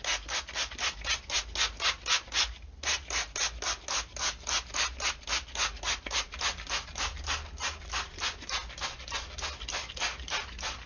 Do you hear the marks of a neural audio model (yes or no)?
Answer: no